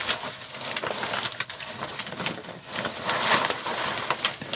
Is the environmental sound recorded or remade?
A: recorded